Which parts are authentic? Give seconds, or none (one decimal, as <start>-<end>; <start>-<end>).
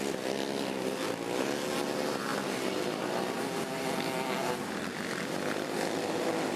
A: 0.0-2.3; 3.0-6.6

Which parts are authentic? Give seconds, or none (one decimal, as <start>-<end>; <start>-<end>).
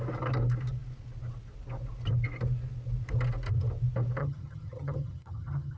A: 0.0-4.2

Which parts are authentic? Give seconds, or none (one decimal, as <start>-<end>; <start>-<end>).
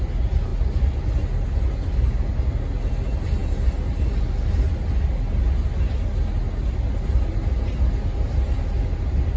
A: 0.0-9.4